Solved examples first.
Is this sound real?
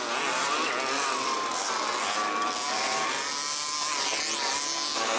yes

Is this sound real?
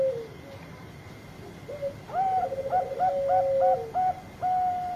yes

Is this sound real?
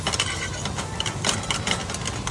yes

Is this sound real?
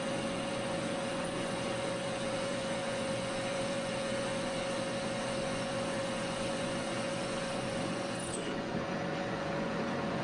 no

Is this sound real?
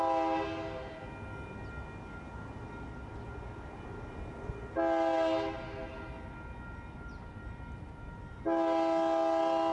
yes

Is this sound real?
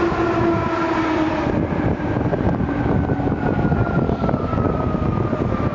yes